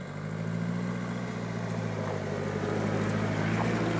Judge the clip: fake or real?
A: real